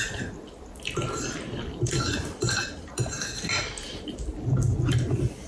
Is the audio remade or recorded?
recorded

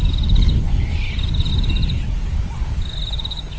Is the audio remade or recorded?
recorded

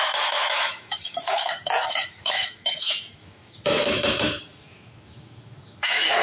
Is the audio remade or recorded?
remade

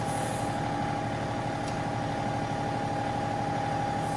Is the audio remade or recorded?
recorded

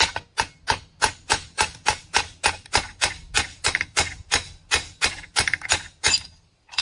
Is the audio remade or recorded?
recorded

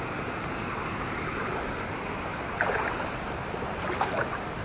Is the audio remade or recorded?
recorded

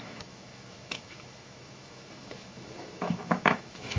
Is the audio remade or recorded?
remade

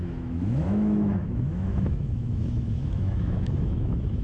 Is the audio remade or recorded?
remade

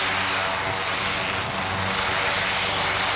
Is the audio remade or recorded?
recorded